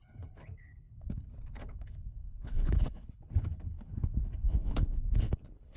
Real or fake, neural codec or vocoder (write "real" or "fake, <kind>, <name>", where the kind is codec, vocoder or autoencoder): fake, codec, HILCodec